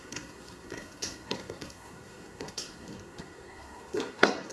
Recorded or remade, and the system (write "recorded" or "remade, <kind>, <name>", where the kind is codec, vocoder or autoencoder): remade, codec, SNAC